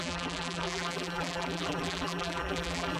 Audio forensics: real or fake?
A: fake